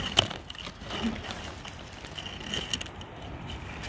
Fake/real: real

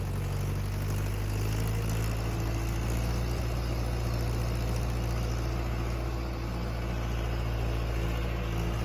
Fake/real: real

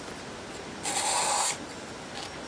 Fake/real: real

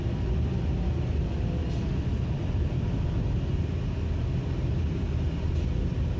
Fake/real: real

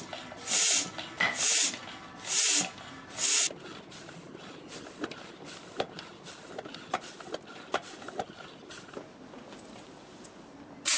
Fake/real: real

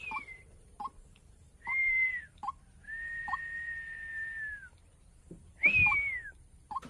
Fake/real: real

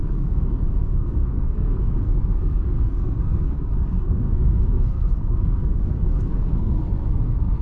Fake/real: fake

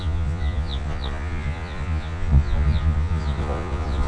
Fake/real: fake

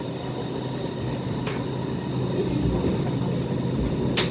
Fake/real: real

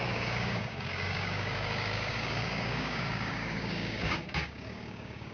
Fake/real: fake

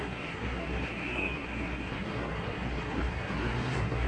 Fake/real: fake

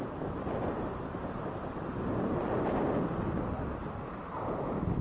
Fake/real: real